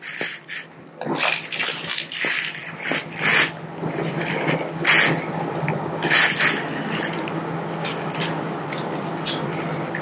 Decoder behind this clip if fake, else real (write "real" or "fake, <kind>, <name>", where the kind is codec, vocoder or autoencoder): real